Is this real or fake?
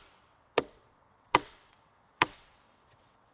fake